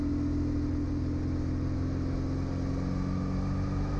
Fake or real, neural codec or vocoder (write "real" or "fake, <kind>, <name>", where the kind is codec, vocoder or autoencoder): real